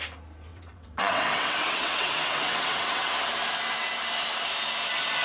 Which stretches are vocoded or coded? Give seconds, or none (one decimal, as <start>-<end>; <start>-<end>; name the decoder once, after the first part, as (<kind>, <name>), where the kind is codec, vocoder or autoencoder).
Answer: 0.5-3.1 (vocoder, WaveNeXt)